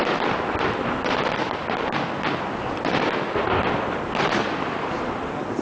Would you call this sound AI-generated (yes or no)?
no